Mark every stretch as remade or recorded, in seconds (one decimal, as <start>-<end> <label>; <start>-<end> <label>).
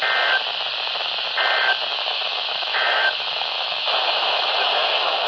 0.0-1.9 recorded; 1.9-5.3 remade